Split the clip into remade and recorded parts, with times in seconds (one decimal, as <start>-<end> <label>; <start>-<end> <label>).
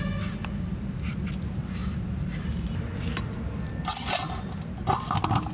0.0-5.5 recorded